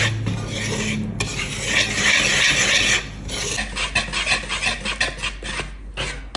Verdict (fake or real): real